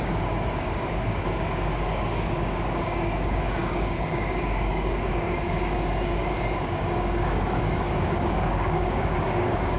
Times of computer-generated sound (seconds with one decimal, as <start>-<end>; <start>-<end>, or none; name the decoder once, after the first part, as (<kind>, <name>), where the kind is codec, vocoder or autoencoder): 0.0-9.8 (codec, DAC)